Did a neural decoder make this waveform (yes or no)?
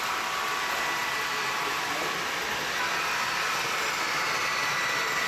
no